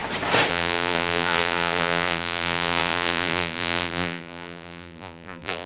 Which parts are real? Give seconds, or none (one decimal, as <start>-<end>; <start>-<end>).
0.0-0.5